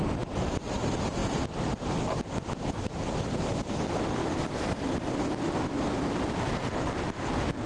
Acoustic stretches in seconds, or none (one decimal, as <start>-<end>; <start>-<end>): 0.0-7.7